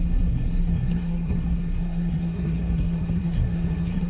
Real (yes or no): no